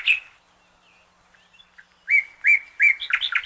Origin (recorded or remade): recorded